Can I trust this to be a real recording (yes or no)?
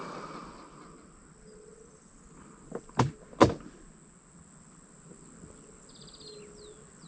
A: yes